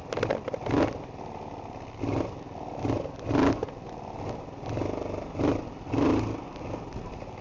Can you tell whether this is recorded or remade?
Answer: recorded